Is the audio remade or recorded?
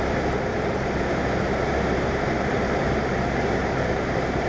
remade